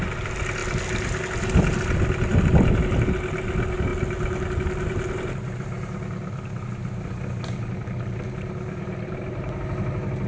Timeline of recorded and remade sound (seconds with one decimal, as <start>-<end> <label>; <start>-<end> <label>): 0.0-10.3 recorded

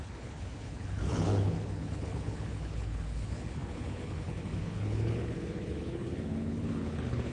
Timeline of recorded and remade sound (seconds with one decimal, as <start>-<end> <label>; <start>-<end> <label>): 0.0-7.3 remade